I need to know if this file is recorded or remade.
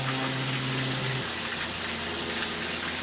recorded